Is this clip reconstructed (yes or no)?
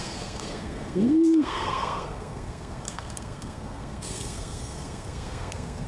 yes